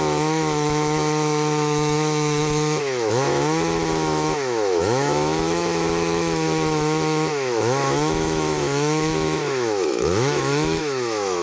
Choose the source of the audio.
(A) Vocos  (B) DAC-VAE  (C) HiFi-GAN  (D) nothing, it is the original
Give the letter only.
B